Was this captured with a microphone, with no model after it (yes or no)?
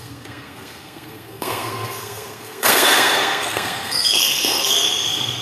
no